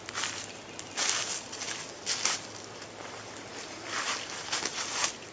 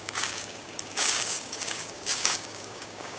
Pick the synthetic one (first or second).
second